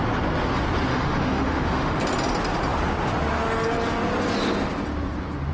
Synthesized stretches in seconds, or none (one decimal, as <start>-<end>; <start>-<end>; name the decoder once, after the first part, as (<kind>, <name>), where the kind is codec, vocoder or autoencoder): 0.9-2.0 (autoencoder, DAC-VAE)

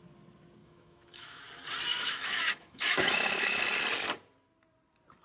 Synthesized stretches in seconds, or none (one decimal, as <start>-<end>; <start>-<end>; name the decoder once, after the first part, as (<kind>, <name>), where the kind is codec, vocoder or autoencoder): 0.6-1.4 (autoencoder, DAC-VAE); 1.9-3.6

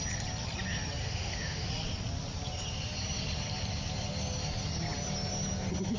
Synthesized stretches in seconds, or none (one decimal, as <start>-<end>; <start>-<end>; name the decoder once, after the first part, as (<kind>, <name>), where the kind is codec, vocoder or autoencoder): 1.0-1.7 (autoencoder, DAC-VAE)

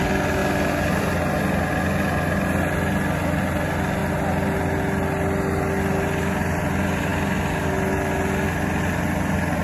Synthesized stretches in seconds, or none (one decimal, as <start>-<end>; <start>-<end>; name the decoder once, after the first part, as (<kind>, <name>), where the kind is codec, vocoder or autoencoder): none

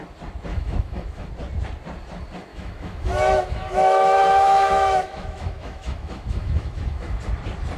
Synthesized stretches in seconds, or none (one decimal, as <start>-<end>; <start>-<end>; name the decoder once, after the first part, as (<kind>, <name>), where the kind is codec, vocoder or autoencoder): 0.5-1.3 (autoencoder, DAC-VAE); 2.5-7.2

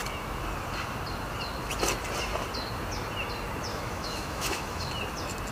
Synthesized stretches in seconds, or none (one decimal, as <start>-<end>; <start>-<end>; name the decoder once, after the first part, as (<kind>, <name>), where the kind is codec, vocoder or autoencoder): 3.7-4.9 (autoencoder, DAC-VAE)

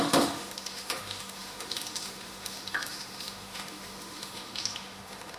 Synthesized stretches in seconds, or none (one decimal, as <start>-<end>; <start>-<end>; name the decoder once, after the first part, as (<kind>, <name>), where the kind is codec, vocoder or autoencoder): 0.0-5.4 (autoencoder, DAC-VAE)